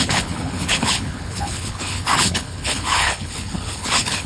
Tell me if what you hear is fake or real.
fake